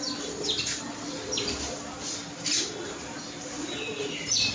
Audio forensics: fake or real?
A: real